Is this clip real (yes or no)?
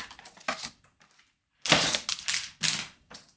yes